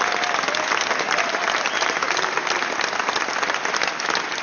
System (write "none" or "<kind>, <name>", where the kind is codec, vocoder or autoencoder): none